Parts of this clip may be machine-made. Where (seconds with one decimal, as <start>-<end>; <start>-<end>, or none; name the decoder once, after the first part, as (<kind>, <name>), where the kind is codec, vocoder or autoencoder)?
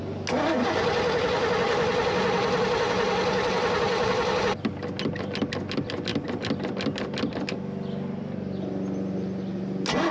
none